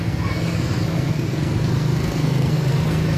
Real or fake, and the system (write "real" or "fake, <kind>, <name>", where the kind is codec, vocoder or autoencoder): fake, codec, SNAC